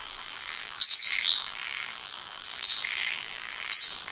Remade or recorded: remade